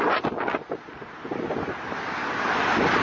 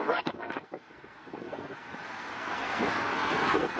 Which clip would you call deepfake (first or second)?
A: second